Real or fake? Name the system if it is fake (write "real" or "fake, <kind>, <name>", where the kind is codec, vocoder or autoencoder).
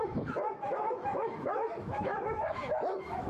fake, autoencoder, DAC-VAE